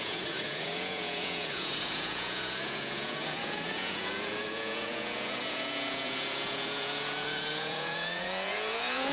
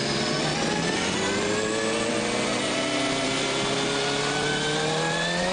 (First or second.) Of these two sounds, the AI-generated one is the first